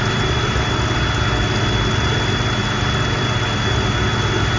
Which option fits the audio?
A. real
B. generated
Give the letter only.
A